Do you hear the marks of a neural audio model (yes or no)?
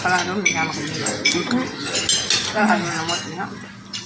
no